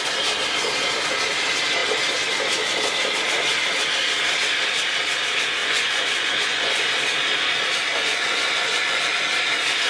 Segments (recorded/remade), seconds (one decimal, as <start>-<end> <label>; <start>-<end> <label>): 0.0-5.6 recorded; 5.6-6.8 remade; 6.8-7.9 recorded; 7.9-9.0 remade; 9.0-9.9 recorded

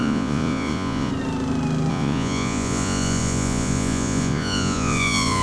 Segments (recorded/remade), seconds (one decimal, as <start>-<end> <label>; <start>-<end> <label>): 0.0-1.1 remade; 1.1-1.9 recorded; 1.9-5.4 remade